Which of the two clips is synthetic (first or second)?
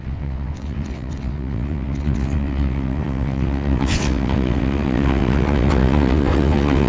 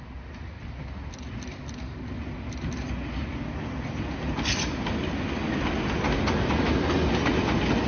first